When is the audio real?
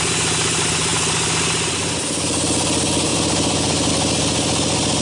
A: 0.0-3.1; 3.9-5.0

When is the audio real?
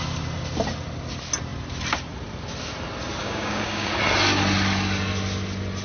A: 0.0-3.2; 3.9-5.8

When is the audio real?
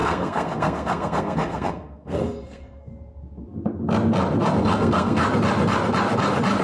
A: 2.9-4.6; 5.2-6.6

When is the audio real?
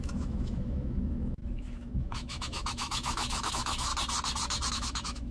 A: 3.9-4.7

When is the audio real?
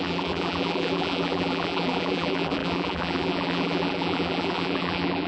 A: none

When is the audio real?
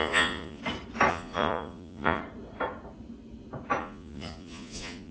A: 0.6-1.1; 2.2-3.8